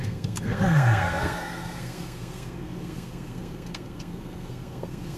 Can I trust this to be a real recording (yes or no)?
no